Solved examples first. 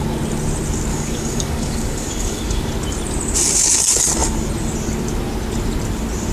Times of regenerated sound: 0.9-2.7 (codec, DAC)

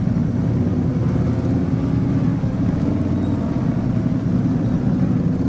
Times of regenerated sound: 2.3-2.9 (codec, DAC)

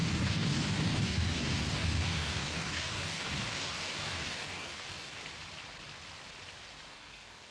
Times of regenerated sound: 0.0-5.2 (codec, DAC); 6.9-7.5

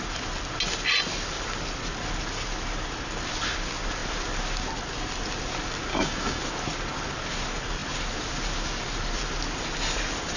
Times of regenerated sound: 5.9-6.4 (codec, DAC)